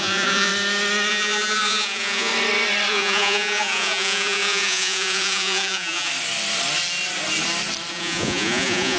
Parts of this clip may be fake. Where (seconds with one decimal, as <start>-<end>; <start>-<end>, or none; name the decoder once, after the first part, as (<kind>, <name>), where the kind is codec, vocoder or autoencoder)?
0.0-0.5 (vocoder, Vocos); 1.1-2.3; 2.9-6.1; 7.9-9.0